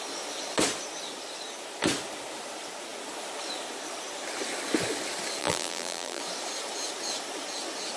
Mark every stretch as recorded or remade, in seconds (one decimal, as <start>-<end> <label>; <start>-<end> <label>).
0.0-5.4 recorded; 5.4-6.2 remade; 6.2-8.0 recorded